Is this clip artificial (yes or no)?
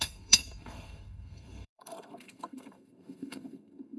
yes